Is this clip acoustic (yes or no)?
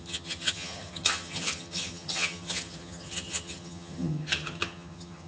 no